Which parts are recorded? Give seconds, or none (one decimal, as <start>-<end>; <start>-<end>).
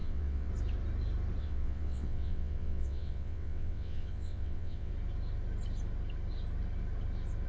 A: 0.5-1.4; 4.9-7.5